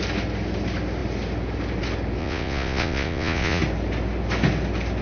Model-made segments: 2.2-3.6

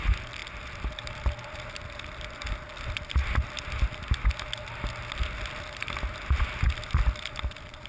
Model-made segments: none

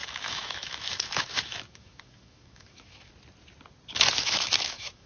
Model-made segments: 0.0-3.1; 3.9-5.1

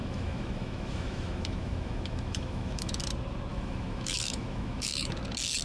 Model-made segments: 0.0-3.0; 3.5-5.1

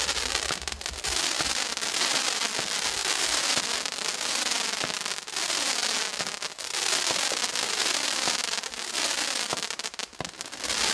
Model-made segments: none

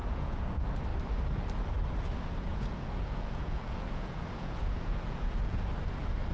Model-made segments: 0.0-0.5; 2.5-5.6